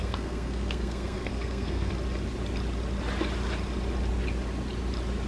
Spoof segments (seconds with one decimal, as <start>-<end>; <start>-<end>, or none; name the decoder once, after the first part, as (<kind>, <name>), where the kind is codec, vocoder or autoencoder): 0.0-1.9 (codec, SNAC)